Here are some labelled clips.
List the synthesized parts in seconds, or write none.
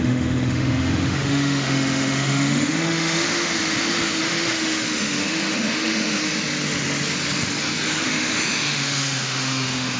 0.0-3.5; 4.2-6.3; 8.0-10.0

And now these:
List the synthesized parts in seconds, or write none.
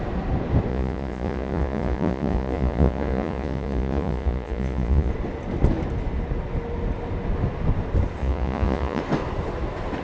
0.7-5.1; 8.2-9.0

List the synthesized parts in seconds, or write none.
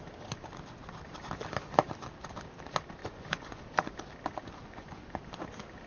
3.0-3.6; 4.6-5.2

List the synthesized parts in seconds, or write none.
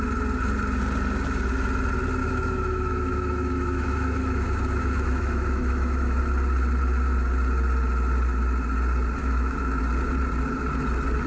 2.2-6.2; 9.2-9.8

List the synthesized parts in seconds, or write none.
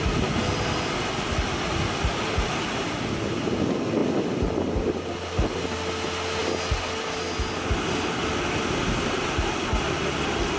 none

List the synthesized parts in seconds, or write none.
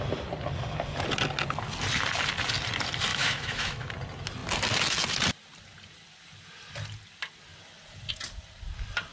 3.1-3.9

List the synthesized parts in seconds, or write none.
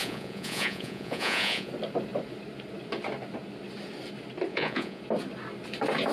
0.0-1.7; 4.5-5.0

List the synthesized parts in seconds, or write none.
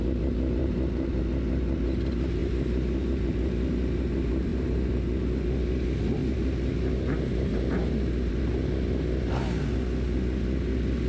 0.6-1.2; 2.4-3.3; 4.5-5.0; 6.2-8.3